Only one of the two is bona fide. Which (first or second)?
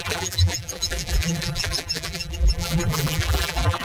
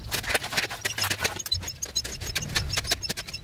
second